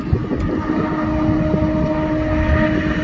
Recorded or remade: recorded